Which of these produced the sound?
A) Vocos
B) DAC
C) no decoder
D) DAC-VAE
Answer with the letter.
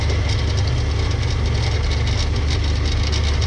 C